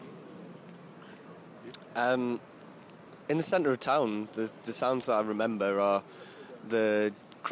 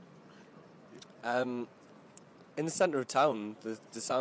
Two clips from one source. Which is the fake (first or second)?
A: second